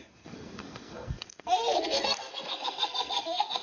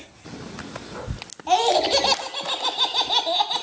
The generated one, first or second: first